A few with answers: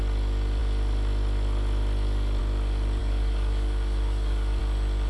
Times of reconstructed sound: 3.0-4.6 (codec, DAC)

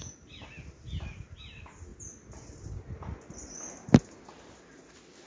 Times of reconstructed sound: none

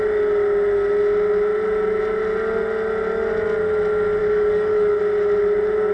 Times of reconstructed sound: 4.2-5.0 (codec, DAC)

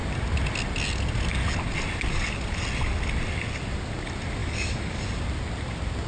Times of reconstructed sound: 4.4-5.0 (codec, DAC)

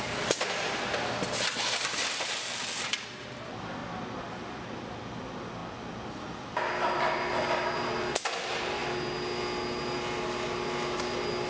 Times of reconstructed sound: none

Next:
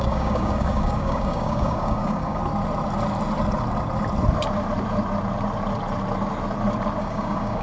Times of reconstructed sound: 0.0-2.4 (codec, DAC); 7.0-7.6